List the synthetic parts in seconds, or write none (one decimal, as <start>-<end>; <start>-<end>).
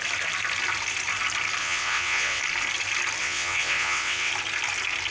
1.6-2.4; 3.2-4.3